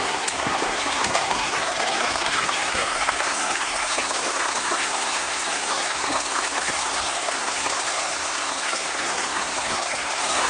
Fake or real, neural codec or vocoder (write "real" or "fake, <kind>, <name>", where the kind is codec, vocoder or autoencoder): fake, codec, SNAC